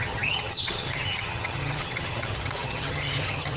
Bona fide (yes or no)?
no